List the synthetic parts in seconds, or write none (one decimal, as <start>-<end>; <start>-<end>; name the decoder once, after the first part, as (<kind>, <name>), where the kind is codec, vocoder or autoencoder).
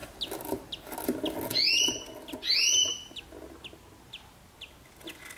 none